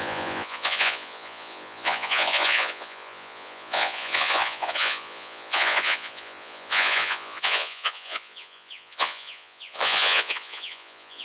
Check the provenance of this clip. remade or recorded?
remade